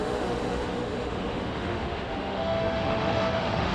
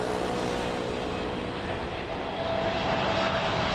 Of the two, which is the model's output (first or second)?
first